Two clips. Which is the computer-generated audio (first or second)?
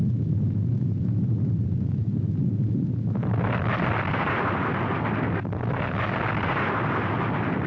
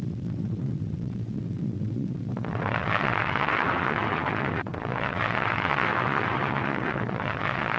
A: second